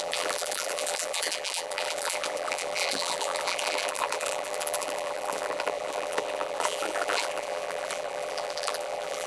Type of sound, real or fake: fake